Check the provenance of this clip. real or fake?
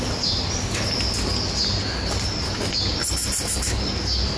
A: real